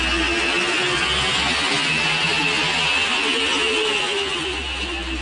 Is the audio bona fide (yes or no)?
yes